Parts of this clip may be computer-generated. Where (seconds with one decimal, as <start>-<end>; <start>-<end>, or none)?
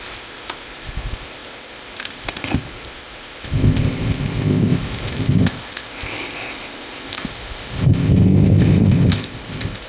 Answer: 0.0-9.9